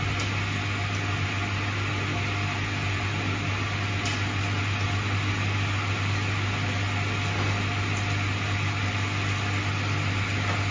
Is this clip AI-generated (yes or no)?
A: no